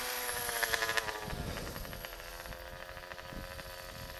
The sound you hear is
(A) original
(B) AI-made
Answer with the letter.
A